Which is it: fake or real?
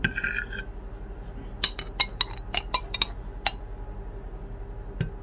real